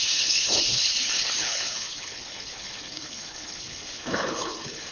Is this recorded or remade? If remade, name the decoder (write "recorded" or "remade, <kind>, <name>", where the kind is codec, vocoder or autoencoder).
remade, codec, HILCodec